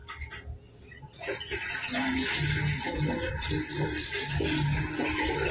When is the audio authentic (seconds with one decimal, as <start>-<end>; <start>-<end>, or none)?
0.0-5.5